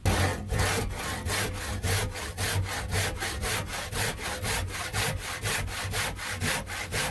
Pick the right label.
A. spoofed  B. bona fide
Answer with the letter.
B